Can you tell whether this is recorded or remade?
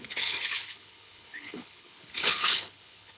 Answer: remade